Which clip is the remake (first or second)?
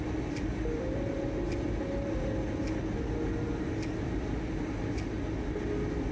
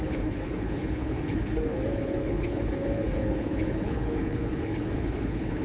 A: second